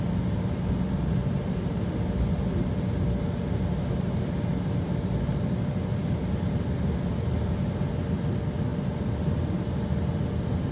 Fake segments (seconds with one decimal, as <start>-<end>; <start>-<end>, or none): none